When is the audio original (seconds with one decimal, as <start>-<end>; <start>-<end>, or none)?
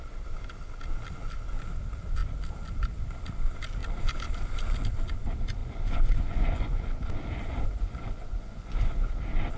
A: 0.0-5.6; 9.1-9.6